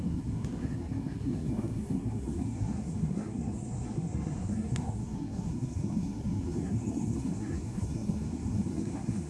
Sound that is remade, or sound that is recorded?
remade